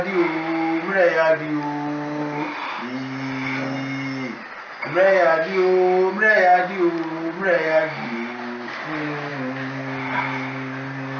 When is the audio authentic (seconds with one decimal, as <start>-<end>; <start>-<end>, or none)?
0.0-11.2